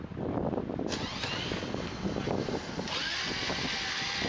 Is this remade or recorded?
recorded